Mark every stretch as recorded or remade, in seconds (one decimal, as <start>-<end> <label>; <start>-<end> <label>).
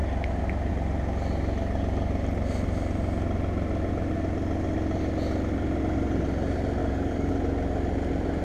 0.0-6.8 recorded; 6.8-7.3 remade; 7.3-8.4 recorded